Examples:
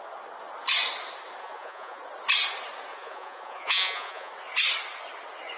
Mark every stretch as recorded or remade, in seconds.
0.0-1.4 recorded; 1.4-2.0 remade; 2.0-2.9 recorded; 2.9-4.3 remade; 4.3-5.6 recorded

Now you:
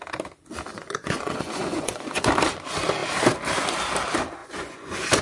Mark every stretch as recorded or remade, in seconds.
0.0-0.7 recorded; 0.7-2.3 remade; 2.3-4.4 recorded; 4.4-5.2 remade

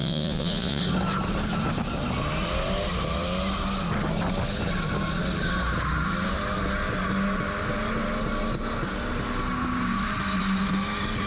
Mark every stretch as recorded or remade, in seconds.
0.0-0.8 remade; 0.8-11.3 recorded

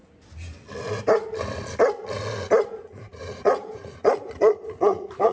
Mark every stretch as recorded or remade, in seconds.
0.0-2.7 recorded; 2.7-5.3 remade

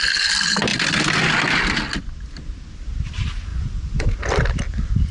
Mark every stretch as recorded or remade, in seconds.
0.0-3.5 recorded; 3.5-4.1 remade; 4.1-5.1 recorded

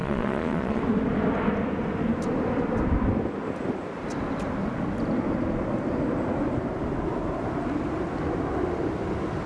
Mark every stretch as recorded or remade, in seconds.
0.0-0.8 remade; 0.8-9.5 recorded